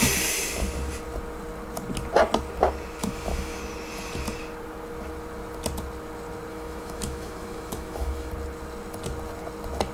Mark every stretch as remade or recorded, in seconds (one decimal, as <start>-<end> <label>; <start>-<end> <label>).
0.0-3.0 recorded; 3.0-3.6 remade; 3.6-6.5 recorded; 6.5-8.3 remade; 8.3-9.9 recorded

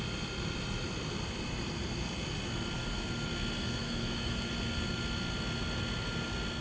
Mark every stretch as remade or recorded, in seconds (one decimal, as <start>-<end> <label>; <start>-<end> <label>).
0.0-3.8 recorded; 3.8-4.5 remade; 4.5-6.6 recorded

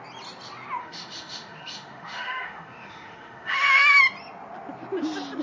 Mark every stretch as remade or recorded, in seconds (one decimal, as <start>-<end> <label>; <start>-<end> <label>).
0.0-0.8 recorded; 0.8-4.0 remade; 4.0-5.4 recorded

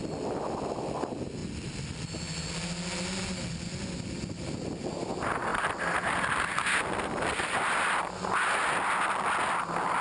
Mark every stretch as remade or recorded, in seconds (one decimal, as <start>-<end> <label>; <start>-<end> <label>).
0.0-10.0 recorded

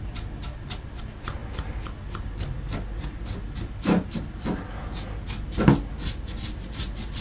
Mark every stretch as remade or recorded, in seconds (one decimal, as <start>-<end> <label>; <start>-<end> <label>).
0.0-7.2 recorded

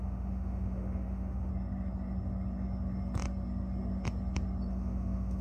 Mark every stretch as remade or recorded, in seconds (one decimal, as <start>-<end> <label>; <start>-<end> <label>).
0.0-1.5 remade; 1.5-4.7 recorded; 4.7-5.4 remade

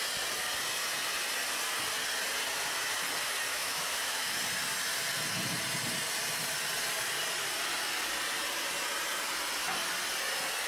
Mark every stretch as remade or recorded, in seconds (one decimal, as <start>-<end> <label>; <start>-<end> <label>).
0.0-3.5 recorded; 3.5-4.4 remade; 4.4-10.7 recorded